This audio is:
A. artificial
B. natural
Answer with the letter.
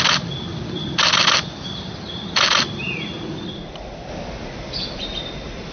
B